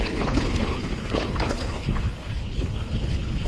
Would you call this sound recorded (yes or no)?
no